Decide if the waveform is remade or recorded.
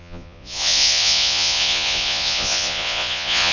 remade